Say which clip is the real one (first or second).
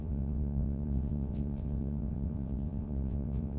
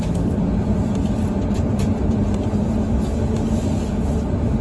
second